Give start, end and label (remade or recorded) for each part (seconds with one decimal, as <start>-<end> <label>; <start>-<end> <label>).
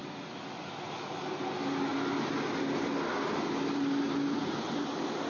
0.0-5.3 recorded